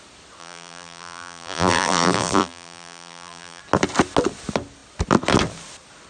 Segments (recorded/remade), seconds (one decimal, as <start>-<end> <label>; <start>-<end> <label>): 0.0-0.4 recorded; 0.4-3.6 remade; 3.6-6.1 recorded